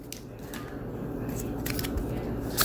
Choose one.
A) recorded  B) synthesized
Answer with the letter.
A